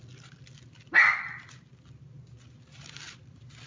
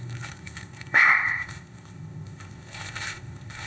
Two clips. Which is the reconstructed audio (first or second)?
second